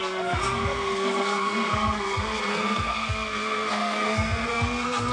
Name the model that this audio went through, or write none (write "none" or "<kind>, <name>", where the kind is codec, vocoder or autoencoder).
codec, SNAC